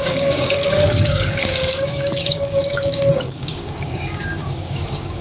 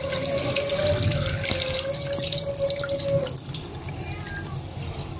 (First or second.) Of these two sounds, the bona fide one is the second